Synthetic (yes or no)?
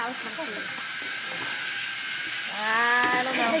no